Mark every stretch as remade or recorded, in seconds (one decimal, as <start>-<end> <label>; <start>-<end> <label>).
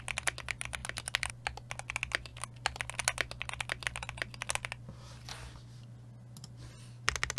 0.0-7.4 recorded